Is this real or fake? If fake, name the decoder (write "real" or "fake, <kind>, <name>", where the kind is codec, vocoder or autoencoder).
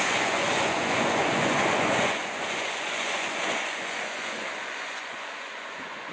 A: fake, vocoder, Vocos